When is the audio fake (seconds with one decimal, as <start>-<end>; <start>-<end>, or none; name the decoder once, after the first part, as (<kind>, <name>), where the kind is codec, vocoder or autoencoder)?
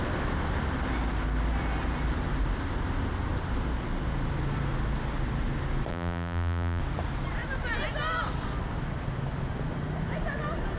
5.9-6.8 (vocoder, BigVGAN v2)